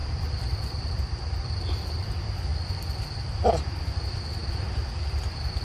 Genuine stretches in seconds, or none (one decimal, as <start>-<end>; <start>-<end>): 2.1-4.4; 5.1-5.6